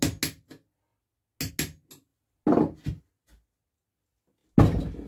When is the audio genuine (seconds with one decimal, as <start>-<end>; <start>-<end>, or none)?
0.0-5.1

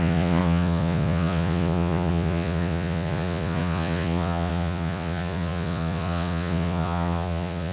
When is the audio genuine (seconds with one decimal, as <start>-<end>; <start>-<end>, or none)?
none